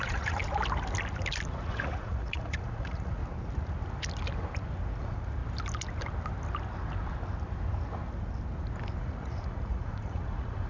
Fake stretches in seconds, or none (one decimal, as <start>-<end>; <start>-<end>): 0.0-0.4; 1.5-3.2; 5.0-5.4; 9.0-10.7